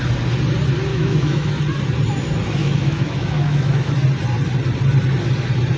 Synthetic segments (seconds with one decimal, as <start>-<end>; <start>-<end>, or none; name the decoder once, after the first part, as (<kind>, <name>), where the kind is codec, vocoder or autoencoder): 0.9-1.5 (autoencoder, DAC-VAE); 2.6-3.9